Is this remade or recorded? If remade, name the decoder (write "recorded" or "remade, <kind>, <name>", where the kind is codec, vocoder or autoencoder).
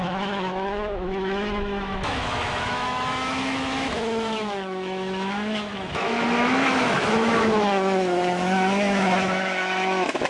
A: remade, autoencoder, DAC-VAE